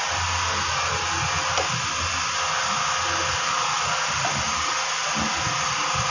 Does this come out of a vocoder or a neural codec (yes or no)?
no